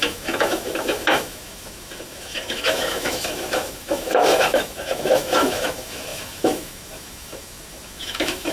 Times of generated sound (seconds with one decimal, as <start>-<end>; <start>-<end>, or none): 0.0-8.5